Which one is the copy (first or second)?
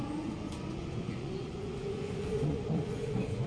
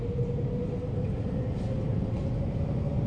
first